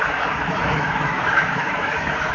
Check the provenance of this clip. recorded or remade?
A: remade